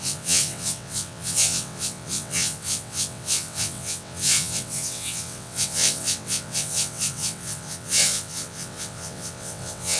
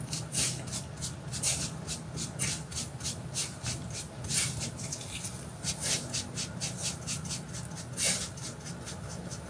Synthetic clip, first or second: first